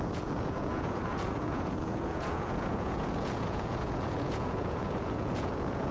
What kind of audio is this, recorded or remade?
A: remade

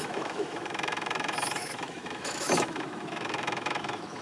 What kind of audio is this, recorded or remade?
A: remade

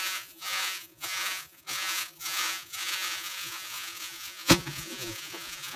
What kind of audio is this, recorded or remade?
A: remade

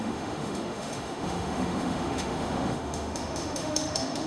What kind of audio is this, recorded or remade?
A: remade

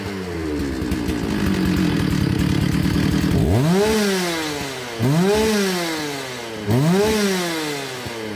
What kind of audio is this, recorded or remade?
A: recorded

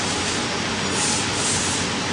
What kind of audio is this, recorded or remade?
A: recorded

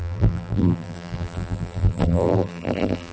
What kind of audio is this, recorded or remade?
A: remade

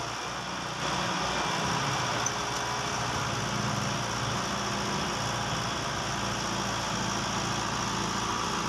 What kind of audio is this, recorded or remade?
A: recorded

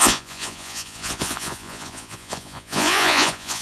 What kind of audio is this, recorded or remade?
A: remade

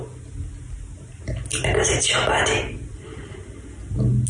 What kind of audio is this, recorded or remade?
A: recorded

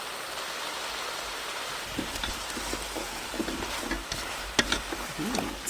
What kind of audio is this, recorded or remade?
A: recorded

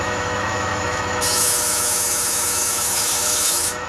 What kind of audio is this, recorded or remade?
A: remade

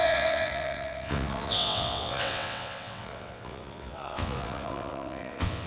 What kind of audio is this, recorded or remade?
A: remade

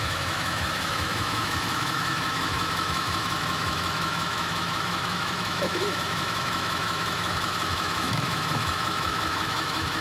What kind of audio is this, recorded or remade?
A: remade